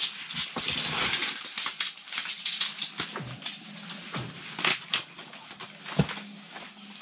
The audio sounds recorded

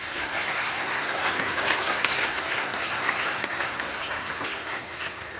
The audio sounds remade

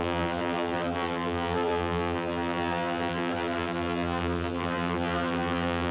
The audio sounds remade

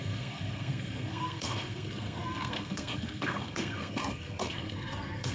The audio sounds remade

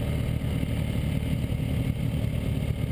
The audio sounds recorded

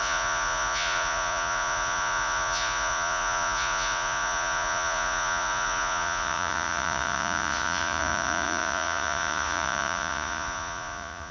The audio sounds remade